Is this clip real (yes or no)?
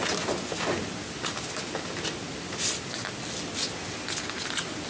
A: yes